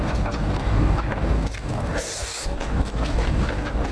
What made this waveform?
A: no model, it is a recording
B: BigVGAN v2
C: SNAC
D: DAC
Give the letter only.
D